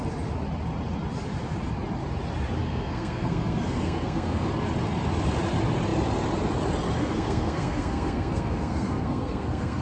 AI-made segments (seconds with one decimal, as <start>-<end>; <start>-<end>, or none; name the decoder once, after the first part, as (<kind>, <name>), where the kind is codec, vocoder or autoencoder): 2.6-4.5 (codec, SNAC); 7.0-9.8